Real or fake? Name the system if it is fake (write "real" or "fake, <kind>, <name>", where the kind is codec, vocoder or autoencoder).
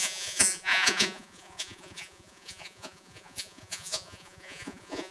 fake, vocoder, Vocos